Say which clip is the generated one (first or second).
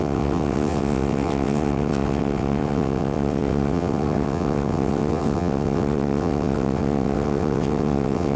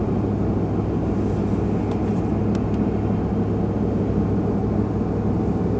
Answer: first